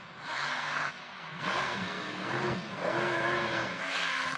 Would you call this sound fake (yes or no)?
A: yes